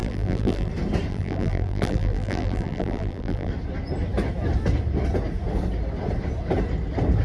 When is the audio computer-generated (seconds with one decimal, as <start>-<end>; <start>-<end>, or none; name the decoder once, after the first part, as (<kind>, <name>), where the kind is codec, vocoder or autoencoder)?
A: 0.0-0.7 (vocoder, BigVGAN v2); 1.1-3.5